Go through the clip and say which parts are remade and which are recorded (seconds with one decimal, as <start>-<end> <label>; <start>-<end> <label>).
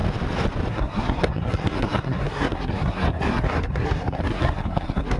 0.0-0.7 recorded; 0.7-5.2 remade